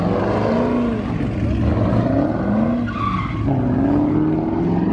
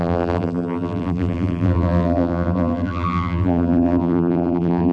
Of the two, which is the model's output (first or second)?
second